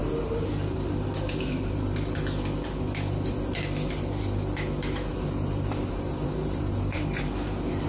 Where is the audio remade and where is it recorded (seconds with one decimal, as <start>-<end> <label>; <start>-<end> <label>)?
0.0-0.5 remade; 0.5-5.1 recorded; 5.1-7.3 remade; 7.3-7.9 recorded